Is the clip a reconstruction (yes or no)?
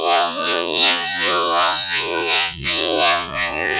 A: yes